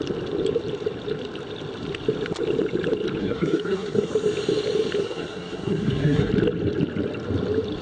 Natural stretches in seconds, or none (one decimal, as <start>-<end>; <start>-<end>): 0.0-3.2; 4.1-5.0; 6.3-7.8